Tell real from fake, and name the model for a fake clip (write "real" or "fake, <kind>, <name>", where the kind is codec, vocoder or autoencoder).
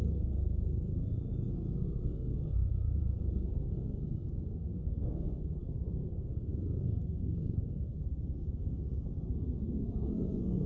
fake, codec, SNAC